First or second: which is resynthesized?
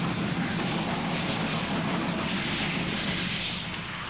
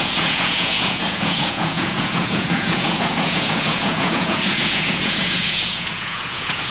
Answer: second